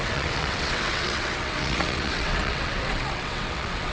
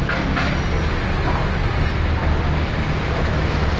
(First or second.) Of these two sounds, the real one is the second